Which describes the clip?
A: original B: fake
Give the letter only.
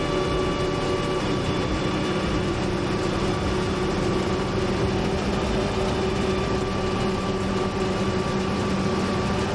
A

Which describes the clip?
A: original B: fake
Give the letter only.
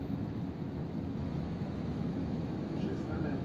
B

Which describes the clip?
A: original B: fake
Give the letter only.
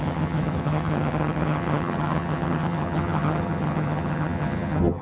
B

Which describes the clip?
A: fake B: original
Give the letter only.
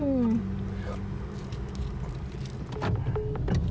B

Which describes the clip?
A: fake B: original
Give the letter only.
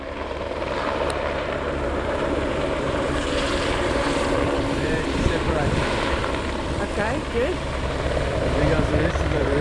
A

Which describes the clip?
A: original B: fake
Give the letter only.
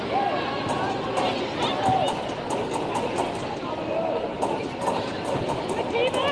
A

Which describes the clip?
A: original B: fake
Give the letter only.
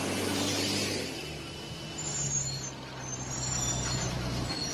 A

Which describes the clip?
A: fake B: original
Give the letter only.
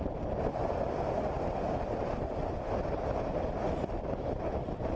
B